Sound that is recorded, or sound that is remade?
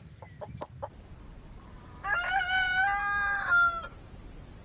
recorded